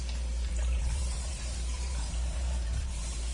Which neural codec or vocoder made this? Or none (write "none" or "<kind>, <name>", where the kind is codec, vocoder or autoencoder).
vocoder, BigVGAN v2